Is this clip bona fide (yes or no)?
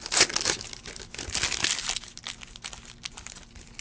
yes